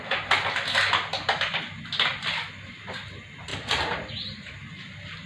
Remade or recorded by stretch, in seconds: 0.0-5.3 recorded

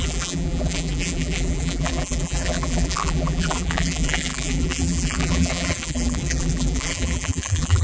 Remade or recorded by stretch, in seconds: 0.0-7.8 remade

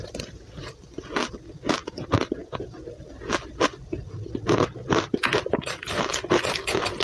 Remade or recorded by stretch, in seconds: 0.0-7.0 recorded

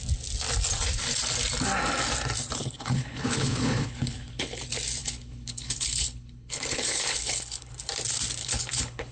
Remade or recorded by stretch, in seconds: 0.0-2.6 recorded; 2.6-4.6 remade; 4.6-5.0 recorded; 5.0-7.7 remade; 7.7-8.4 recorded; 8.4-9.1 remade

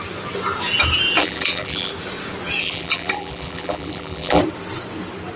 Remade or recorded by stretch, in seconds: 0.0-1.2 recorded; 1.2-1.9 remade; 1.9-2.6 recorded; 2.6-4.4 remade; 4.4-5.4 recorded

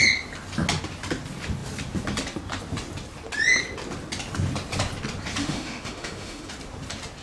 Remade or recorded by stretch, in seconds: 0.0-5.4 recorded; 5.4-6.5 remade; 6.5-7.2 recorded

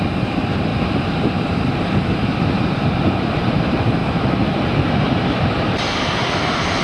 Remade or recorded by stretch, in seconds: 0.0-6.8 remade